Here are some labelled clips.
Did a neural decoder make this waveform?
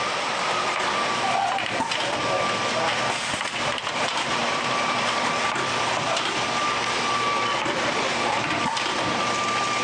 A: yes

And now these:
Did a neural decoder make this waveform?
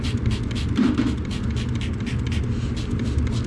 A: no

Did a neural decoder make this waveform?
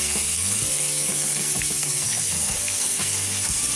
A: yes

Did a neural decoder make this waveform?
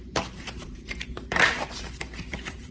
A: yes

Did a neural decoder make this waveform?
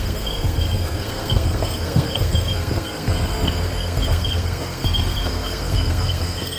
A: yes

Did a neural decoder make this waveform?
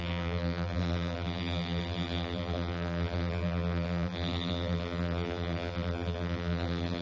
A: yes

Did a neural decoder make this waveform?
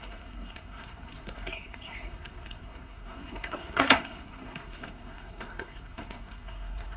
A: yes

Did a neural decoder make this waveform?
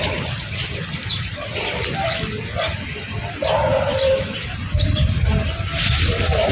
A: yes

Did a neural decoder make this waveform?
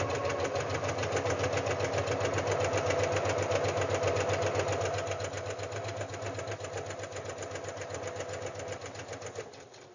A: no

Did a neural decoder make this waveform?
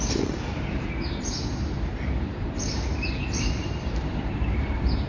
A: yes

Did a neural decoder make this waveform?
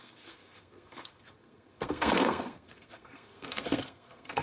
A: yes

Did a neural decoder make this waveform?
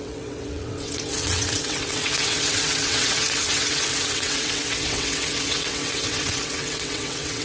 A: yes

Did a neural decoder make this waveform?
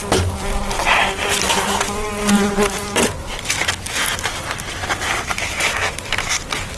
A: no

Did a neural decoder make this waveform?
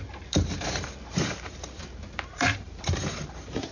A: yes